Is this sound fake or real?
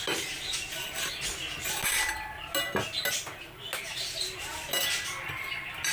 real